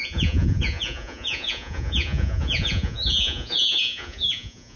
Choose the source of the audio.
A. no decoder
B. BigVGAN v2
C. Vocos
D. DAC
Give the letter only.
C